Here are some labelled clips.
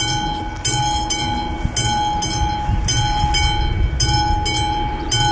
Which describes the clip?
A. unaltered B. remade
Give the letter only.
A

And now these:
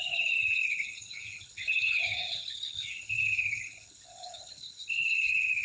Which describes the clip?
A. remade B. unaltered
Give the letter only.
A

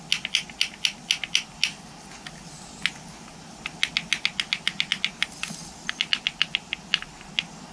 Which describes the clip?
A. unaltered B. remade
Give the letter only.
A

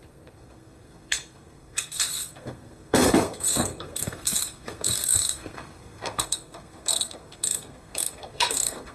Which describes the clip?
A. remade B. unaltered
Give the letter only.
A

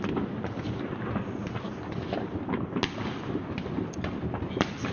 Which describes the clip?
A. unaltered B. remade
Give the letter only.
A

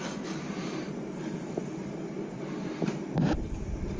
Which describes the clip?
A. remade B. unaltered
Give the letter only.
A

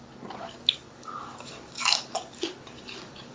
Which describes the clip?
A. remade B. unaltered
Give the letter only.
A